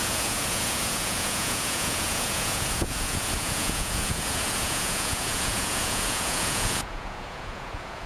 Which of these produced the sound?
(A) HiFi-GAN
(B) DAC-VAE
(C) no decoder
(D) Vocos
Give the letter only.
D